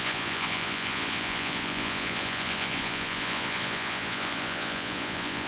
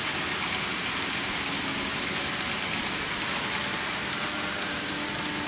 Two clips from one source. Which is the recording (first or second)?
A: second